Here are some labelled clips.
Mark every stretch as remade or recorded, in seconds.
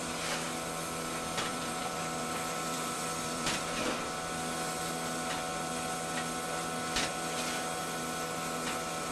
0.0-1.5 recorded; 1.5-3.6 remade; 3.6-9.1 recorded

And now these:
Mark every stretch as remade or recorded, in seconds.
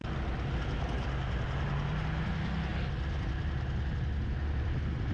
0.0-5.1 recorded